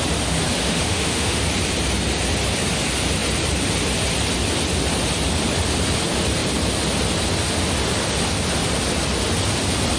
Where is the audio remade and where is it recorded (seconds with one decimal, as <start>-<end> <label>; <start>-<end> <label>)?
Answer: 0.0-0.6 recorded; 0.6-1.4 remade; 1.4-10.0 recorded